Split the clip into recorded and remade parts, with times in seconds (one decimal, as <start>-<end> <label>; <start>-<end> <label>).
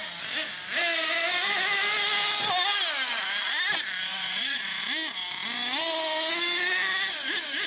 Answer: 0.0-4.1 recorded; 4.1-4.8 remade; 4.8-7.7 recorded